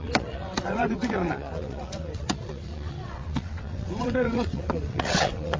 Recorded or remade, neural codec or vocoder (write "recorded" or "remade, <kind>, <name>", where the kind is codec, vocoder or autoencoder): remade, vocoder, WaveNeXt